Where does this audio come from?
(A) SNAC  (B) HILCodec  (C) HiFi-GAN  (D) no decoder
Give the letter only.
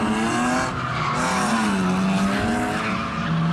D